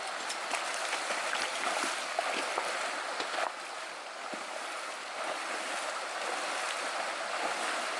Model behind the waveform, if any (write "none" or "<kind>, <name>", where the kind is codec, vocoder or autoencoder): none